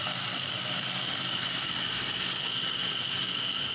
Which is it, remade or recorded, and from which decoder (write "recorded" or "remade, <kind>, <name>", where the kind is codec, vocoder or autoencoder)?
remade, codec, DAC